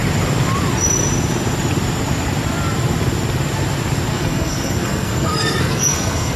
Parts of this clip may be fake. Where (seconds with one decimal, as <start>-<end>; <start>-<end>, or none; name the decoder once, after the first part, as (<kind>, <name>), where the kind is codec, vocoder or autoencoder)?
4.1-6.4 (codec, SNAC)